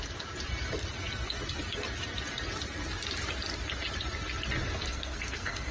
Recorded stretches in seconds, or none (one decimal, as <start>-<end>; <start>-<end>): 0.0-4.9